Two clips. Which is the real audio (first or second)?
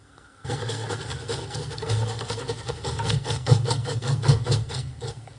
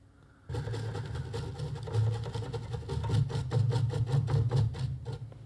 second